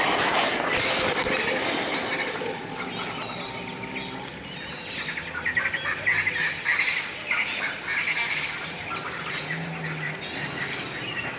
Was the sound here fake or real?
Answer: real